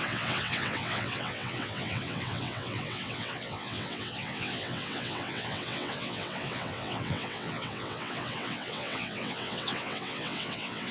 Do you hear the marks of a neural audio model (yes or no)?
yes